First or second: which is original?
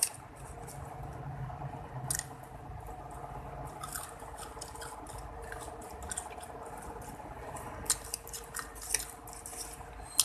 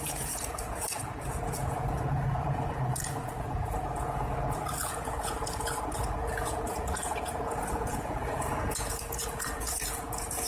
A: first